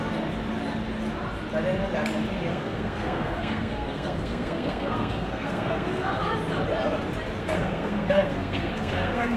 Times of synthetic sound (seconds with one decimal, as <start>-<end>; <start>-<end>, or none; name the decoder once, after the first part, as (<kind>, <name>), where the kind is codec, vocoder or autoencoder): 2.5-6.2 (codec, SNAC); 7.4-9.4